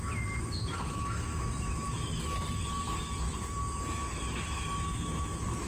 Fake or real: fake